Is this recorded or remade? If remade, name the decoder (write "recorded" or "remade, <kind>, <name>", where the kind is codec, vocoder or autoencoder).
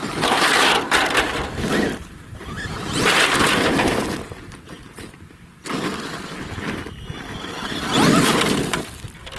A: recorded